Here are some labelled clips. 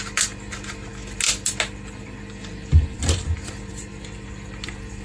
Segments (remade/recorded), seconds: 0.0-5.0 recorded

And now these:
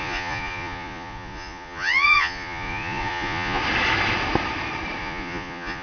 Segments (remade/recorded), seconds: 0.0-3.6 remade; 3.6-5.0 recorded; 5.0-5.8 remade

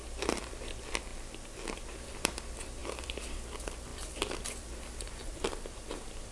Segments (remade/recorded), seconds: 0.0-1.1 remade; 1.1-1.8 recorded; 1.8-6.3 remade

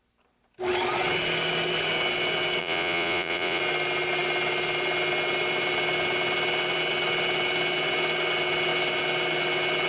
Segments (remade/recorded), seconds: 0.0-2.6 recorded; 2.6-3.6 remade; 3.6-9.9 recorded

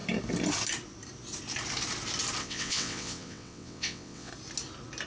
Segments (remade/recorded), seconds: 0.0-2.4 recorded; 2.4-4.3 remade; 4.3-5.1 recorded